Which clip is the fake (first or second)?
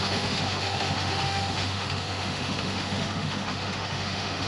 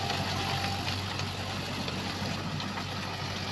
first